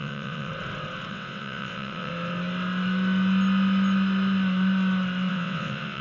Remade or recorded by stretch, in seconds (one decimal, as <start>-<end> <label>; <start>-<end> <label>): 0.0-0.5 remade; 0.5-1.1 recorded; 1.1-2.1 remade; 2.1-5.3 recorded; 5.3-6.0 remade